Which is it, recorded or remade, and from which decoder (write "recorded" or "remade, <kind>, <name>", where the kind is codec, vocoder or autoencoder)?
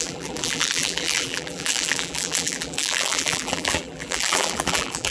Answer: remade, vocoder, BigVGAN v2